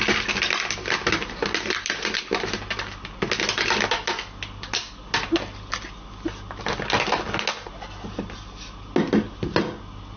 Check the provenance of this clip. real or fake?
real